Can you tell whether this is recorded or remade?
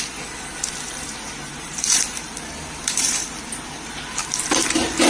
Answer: remade